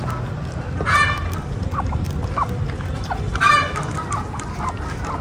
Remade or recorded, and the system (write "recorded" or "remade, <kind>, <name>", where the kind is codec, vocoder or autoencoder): recorded